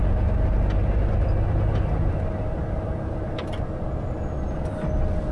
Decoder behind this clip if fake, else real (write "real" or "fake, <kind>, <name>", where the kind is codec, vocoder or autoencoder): real